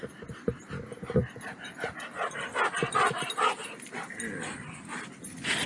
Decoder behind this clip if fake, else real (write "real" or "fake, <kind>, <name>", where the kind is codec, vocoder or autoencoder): real